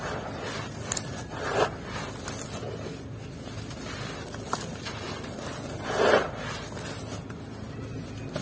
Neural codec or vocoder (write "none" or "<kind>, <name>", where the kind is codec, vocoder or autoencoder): none